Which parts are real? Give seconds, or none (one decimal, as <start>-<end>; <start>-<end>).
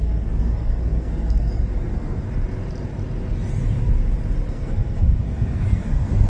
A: 2.2-4.5